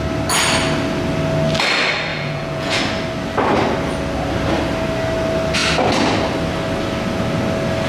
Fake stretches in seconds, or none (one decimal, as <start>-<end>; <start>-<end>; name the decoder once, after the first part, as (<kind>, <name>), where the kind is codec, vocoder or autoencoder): 2.1-2.8 (vocoder, Vocos)